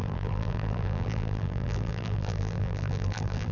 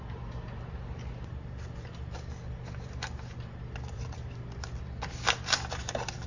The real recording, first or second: second